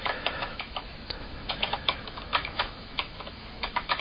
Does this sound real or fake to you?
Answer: fake